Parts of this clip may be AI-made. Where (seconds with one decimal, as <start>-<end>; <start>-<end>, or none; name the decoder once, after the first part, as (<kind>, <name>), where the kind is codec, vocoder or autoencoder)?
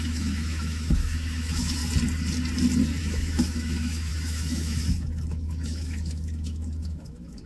0.0-1.8 (autoencoder, DAC-VAE); 3.0-7.5